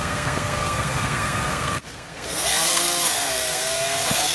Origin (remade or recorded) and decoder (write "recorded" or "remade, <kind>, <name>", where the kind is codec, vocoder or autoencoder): remade, codec, SNAC